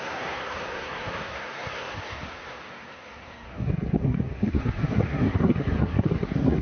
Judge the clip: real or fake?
fake